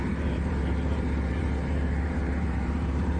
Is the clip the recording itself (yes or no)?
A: no